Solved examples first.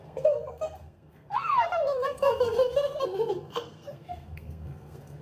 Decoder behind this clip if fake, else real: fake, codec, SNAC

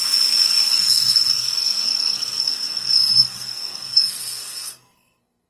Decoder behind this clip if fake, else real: fake, codec, SNAC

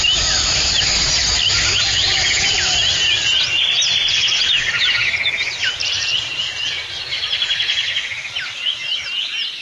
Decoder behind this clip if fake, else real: real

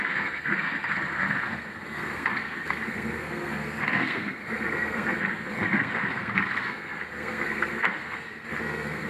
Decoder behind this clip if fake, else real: fake, codec, SNAC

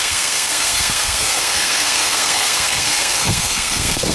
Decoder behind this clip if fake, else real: fake, codec, SNAC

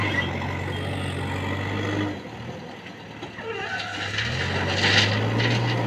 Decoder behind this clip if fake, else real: real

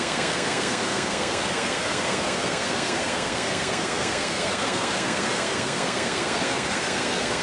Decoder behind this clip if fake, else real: fake, codec, SNAC